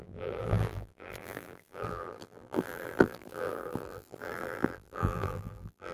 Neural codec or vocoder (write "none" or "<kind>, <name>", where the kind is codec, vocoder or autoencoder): vocoder, BigVGAN v2